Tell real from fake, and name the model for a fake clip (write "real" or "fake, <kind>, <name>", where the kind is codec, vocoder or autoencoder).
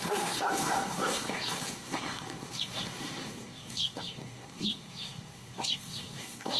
fake, codec, SNAC